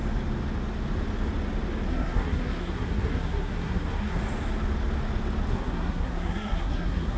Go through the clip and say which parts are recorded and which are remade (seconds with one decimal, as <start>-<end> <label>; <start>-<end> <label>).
0.0-1.9 recorded; 1.9-4.2 remade; 4.2-5.5 recorded; 5.5-7.2 remade